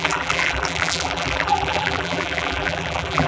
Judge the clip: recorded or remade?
remade